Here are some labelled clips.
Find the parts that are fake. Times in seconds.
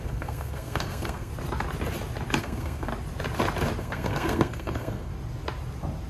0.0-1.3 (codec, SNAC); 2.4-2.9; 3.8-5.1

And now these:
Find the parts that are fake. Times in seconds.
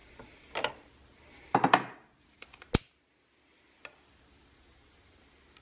none